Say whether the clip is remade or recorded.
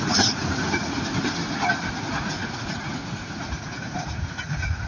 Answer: remade